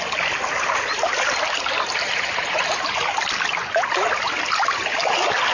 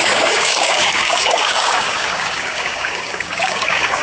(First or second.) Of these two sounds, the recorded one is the first